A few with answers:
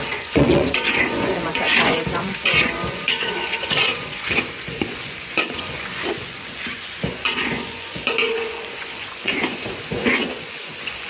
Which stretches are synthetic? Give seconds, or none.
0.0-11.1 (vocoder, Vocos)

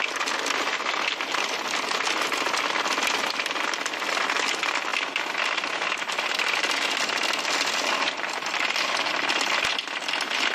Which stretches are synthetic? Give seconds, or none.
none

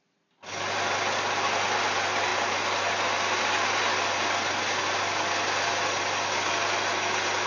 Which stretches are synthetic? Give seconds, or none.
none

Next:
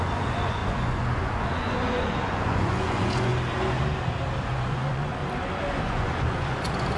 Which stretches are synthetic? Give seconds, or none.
0.0-3.3 (vocoder, Vocos); 4.4-5.2; 5.8-7.0

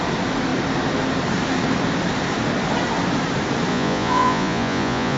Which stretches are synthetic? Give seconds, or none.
3.7-5.2 (vocoder, Vocos)

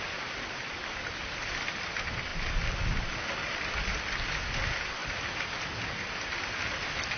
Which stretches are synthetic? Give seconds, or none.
none